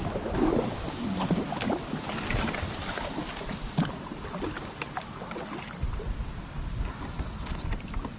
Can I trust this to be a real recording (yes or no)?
yes